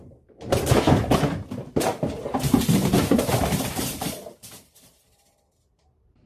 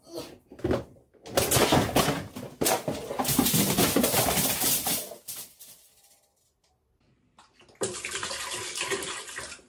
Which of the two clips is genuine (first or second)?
second